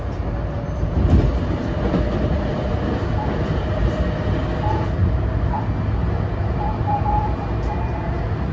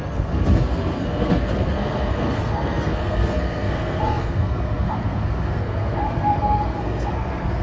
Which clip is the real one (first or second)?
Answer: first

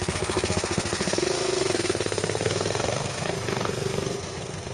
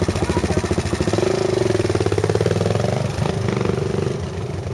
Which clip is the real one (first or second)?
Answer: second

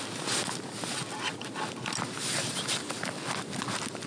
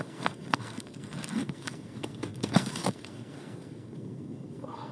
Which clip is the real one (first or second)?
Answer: first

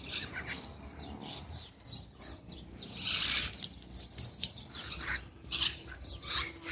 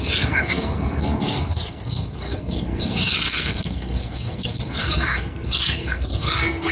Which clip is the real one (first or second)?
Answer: first